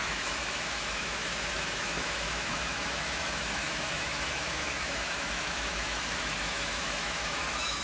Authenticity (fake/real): fake